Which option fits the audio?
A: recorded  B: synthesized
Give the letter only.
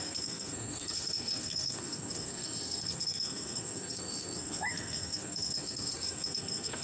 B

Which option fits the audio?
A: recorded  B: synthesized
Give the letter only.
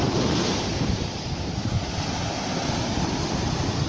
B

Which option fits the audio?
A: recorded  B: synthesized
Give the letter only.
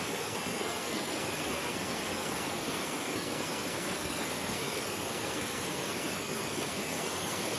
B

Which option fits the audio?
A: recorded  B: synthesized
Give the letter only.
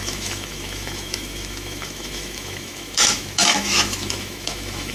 B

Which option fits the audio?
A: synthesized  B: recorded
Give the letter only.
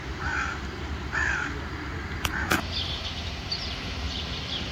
A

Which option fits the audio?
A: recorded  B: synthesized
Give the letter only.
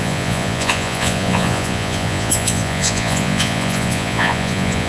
B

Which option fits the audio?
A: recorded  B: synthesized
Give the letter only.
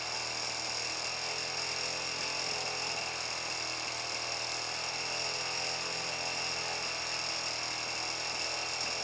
A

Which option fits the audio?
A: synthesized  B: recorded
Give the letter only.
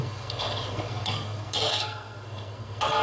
A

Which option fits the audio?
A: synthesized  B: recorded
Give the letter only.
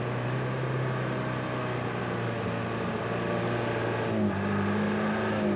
B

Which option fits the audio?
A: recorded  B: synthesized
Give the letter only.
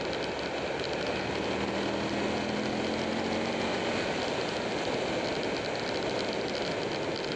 A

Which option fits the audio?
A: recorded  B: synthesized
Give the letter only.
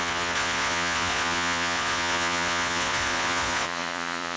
B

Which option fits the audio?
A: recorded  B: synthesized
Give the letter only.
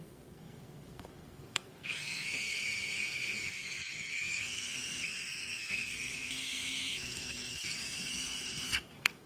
B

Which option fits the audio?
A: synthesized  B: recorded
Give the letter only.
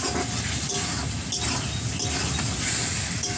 B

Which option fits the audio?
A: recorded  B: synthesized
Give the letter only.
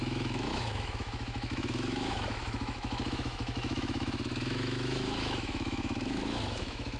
B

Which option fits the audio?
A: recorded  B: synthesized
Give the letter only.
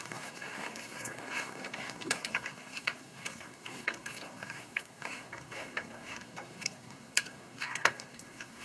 B